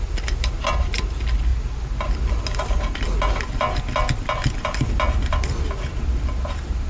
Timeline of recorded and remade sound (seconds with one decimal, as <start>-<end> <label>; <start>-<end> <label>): 0.0-6.9 recorded

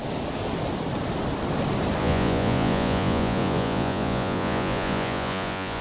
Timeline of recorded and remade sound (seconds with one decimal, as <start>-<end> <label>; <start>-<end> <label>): 0.0-2.0 recorded; 2.0-5.8 remade

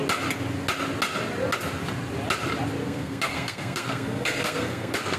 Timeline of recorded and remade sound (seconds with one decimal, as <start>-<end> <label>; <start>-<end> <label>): 0.0-2.8 recorded; 2.8-5.2 remade

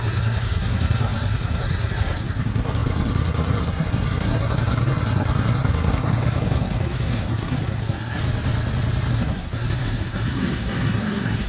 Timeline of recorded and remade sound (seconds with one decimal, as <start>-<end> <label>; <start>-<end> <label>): 0.0-8.2 remade; 8.2-9.1 recorded; 9.1-11.5 remade

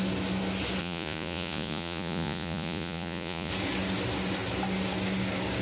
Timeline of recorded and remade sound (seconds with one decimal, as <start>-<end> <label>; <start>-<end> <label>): 0.0-0.8 recorded; 0.8-3.5 remade; 3.5-5.6 recorded

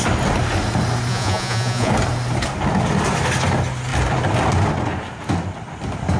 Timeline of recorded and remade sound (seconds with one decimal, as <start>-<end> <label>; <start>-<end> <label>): 0.0-1.1 recorded; 1.1-1.9 remade; 1.9-6.2 recorded

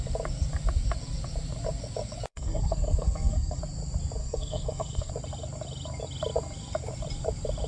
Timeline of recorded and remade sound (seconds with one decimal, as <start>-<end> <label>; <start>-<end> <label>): 0.0-2.3 recorded; 2.3-3.6 remade; 3.6-4.2 recorded; 4.2-5.1 remade; 5.1-7.7 recorded